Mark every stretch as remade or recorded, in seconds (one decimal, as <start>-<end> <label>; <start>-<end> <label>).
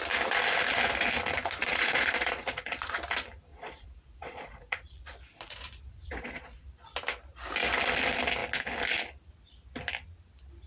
0.0-1.6 recorded; 1.6-3.0 remade; 3.0-3.5 recorded; 3.5-6.6 remade; 6.6-10.7 recorded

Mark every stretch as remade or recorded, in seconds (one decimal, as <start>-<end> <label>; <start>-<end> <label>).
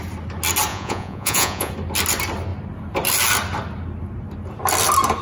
0.0-0.7 recorded; 0.7-1.7 remade; 1.7-5.2 recorded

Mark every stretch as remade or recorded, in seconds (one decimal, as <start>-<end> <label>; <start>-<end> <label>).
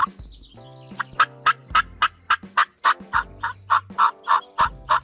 0.0-5.0 recorded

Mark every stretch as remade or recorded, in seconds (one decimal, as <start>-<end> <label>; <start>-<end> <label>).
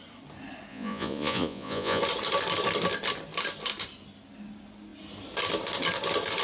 0.0-0.7 recorded; 0.7-2.0 remade; 2.0-6.4 recorded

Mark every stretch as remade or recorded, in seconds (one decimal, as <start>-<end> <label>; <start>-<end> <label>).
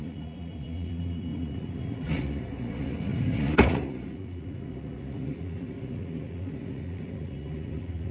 0.0-8.1 remade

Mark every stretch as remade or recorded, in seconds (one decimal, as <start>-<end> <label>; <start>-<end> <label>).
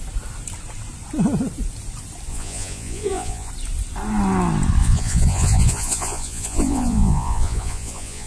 0.0-2.3 recorded; 2.3-3.5 remade; 3.5-4.8 recorded; 4.8-8.3 remade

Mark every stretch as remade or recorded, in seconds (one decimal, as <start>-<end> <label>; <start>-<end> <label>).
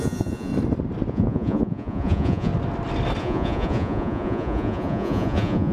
0.0-0.5 remade; 0.5-1.1 recorded; 1.1-2.5 remade; 2.5-3.2 recorded; 3.2-5.7 remade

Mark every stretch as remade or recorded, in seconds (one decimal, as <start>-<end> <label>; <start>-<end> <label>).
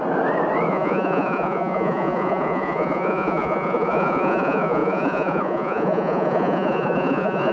0.0-0.7 recorded; 0.7-7.5 remade